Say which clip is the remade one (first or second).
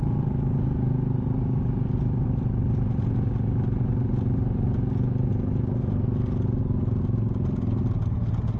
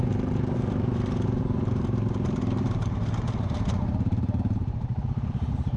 second